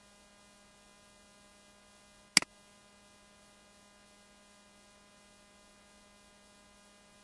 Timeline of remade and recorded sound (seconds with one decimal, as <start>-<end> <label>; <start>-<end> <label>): 0.0-7.2 recorded